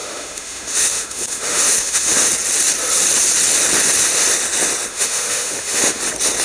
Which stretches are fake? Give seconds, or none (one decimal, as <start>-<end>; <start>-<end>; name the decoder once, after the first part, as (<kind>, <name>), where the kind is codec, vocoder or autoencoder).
0.0-2.3 (autoencoder, DAC-VAE); 4.9-6.0